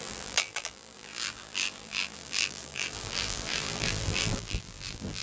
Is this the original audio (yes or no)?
no